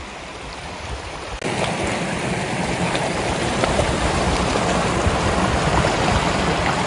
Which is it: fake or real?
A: real